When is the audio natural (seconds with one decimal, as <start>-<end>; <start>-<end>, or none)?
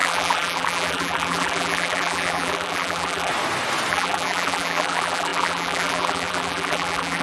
3.3-3.9